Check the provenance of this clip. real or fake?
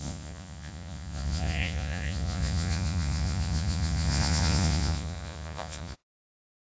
fake